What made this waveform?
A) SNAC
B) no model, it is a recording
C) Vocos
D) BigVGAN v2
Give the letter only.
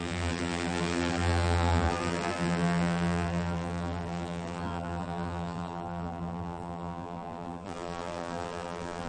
D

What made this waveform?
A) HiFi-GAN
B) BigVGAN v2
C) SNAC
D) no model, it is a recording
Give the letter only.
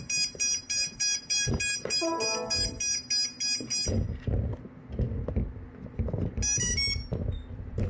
D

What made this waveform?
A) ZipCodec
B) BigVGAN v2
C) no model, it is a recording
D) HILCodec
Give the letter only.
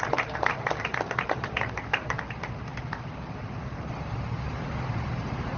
C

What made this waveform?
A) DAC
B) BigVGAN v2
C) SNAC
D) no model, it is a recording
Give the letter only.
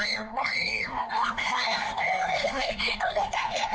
C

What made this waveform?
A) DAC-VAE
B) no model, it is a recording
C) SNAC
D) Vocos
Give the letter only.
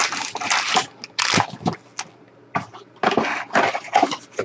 B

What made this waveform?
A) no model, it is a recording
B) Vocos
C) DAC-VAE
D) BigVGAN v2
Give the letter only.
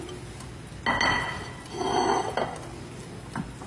A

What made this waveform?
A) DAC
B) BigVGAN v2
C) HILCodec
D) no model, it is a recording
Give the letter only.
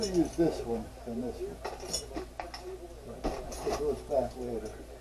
D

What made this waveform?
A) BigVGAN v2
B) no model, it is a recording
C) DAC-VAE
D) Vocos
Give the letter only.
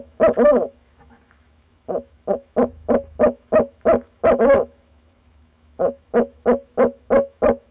C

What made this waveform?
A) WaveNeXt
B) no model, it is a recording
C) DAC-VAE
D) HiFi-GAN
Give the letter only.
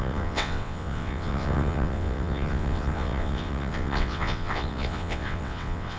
A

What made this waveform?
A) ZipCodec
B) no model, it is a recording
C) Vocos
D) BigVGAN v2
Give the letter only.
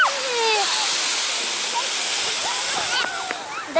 B